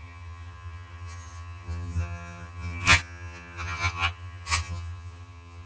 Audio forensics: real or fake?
fake